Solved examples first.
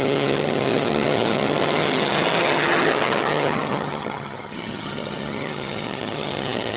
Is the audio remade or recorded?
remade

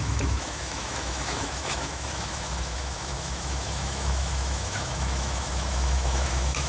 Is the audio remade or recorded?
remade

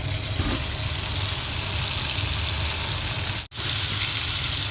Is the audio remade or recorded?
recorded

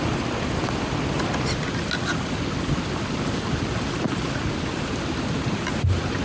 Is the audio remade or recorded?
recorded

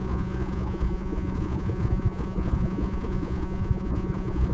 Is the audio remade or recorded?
remade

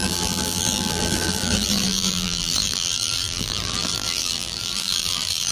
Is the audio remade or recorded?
remade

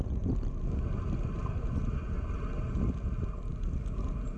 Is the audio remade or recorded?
recorded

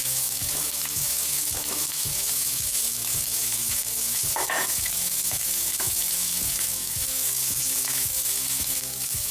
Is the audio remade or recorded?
remade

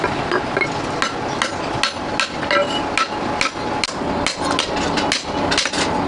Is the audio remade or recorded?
recorded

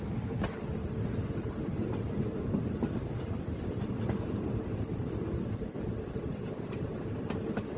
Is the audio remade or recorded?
recorded